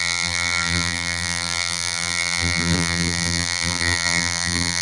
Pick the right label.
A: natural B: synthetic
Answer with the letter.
B